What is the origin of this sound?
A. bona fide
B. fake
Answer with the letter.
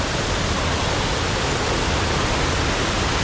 A